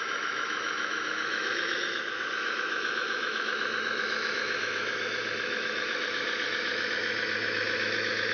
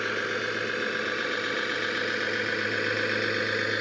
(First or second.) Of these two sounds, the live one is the second